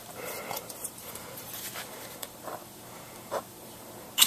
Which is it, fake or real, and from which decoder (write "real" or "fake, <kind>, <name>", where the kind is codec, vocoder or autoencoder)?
fake, vocoder, BigVGAN v2